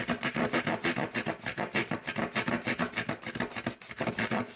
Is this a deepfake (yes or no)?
no